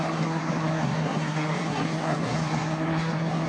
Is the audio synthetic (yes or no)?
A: yes